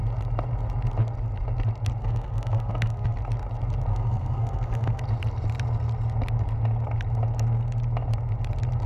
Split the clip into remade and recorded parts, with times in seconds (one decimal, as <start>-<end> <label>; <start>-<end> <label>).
0.0-2.0 recorded; 2.0-3.2 remade; 3.2-3.9 recorded; 3.9-5.0 remade; 5.0-8.9 recorded